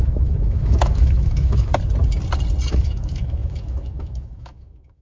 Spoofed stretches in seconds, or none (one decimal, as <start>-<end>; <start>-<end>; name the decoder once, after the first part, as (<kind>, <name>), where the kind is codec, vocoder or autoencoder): 0.0-1.7 (autoencoder, DAC-VAE); 2.7-5.0